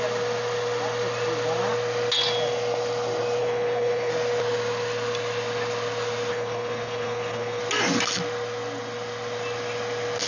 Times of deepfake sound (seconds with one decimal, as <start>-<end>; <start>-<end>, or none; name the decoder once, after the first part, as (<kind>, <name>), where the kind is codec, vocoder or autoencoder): 3.4-4.1 (codec, HILCodec); 6.3-7.6